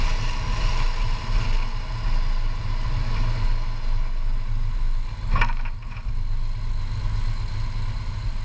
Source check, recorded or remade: recorded